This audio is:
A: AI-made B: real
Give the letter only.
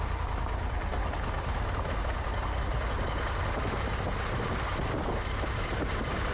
B